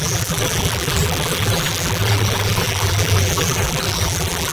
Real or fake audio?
fake